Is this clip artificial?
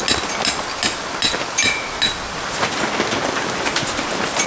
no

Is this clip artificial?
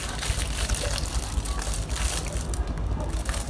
no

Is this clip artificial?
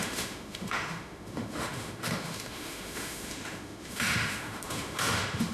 yes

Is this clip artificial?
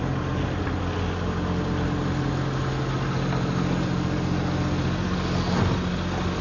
no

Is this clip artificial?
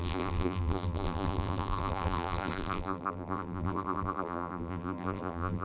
yes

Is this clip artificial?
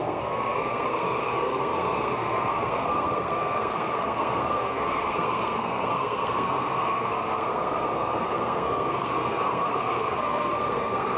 yes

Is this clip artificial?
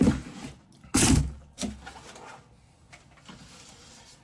no